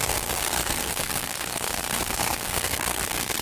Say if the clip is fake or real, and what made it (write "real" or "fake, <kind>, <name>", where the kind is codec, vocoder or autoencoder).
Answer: fake, codec, SNAC